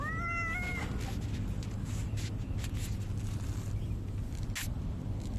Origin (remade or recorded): recorded